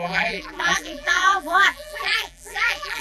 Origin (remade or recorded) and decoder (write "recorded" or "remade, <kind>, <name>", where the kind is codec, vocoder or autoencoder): remade, vocoder, BigVGAN v2